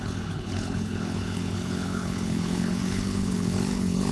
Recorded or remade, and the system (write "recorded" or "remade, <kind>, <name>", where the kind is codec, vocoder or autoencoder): remade, codec, HILCodec